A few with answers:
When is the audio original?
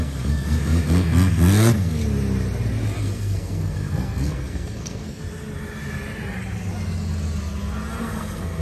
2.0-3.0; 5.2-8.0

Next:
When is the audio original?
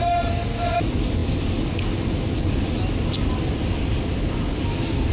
0.0-5.1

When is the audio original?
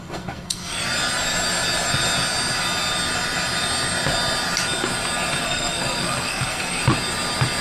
0.8-5.4; 6.8-7.6